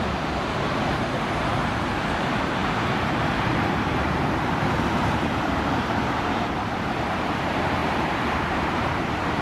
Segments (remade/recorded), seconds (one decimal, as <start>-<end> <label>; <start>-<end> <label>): 0.0-7.8 remade; 7.8-8.5 recorded; 8.5-9.4 remade